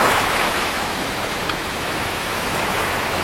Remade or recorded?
remade